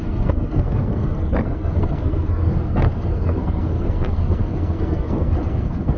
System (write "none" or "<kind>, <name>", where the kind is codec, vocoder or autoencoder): codec, SNAC